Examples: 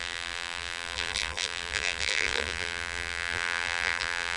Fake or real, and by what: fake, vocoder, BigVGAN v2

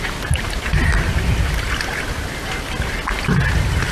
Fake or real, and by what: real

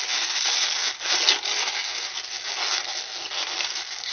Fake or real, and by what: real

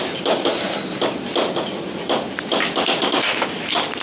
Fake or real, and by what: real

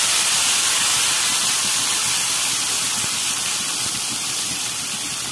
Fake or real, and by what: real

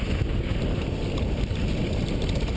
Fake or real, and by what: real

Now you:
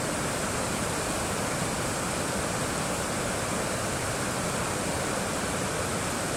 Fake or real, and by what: fake, vocoder, BigVGAN v2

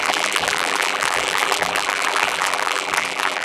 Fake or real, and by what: fake, vocoder, BigVGAN v2